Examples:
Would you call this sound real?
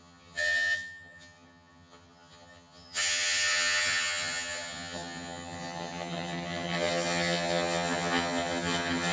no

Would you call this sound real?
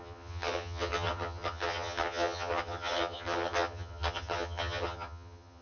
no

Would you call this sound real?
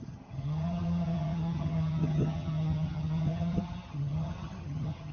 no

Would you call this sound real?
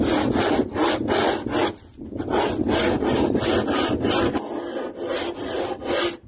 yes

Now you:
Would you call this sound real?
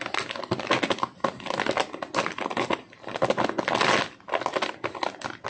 yes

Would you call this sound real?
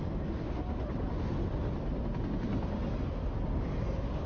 yes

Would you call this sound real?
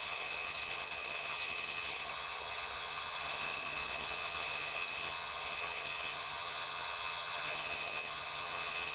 no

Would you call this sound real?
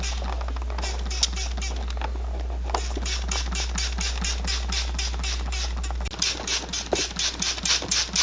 yes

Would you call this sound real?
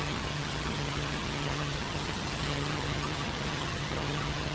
no